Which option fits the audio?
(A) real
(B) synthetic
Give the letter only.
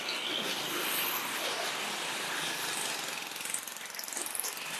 A